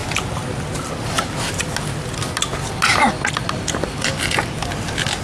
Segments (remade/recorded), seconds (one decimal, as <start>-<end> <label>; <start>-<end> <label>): 0.0-5.2 recorded